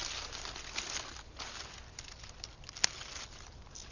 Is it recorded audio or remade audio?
recorded